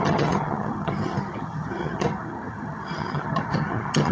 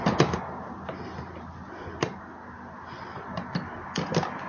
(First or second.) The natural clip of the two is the second